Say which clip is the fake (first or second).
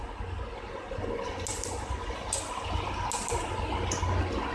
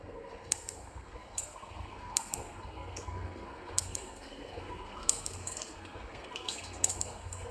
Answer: second